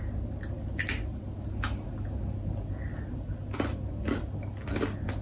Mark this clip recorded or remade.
recorded